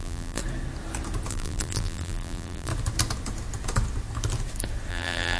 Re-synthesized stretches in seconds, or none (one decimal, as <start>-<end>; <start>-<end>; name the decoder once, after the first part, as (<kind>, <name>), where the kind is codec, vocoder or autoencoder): 0.0-0.4 (vocoder, BigVGAN v2); 1.3-2.7; 4.9-5.4